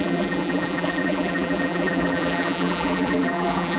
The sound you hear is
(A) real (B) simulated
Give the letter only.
B